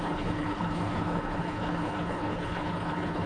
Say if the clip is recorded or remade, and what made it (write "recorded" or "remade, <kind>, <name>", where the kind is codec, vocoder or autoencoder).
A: remade, codec, HILCodec